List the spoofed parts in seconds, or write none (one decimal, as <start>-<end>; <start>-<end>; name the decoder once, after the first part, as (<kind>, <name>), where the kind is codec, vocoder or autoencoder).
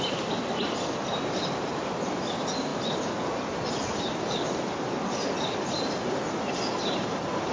none